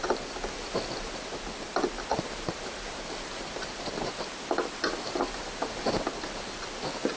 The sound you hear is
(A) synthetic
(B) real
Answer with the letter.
B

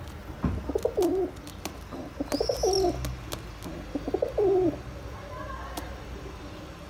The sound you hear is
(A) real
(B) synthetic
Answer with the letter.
A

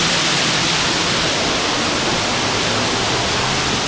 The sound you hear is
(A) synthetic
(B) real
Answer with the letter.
B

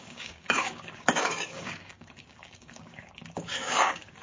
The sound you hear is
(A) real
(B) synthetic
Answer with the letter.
B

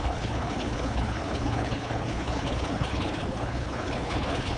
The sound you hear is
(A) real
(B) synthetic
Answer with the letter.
B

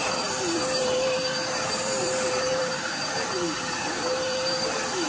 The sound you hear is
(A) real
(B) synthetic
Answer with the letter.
B